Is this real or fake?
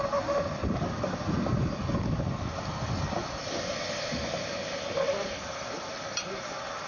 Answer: real